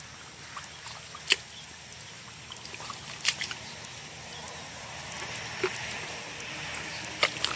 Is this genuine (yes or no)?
yes